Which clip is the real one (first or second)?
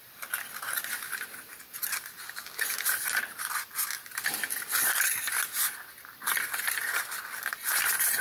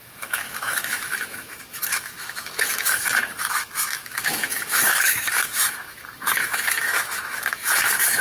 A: first